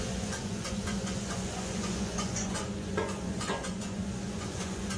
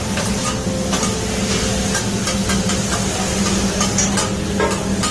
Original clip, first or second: second